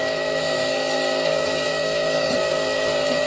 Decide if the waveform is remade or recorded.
remade